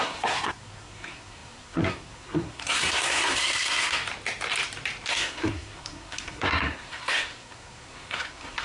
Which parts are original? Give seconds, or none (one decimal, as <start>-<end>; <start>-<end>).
4.0-5.1